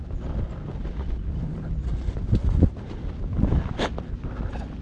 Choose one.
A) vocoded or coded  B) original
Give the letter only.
B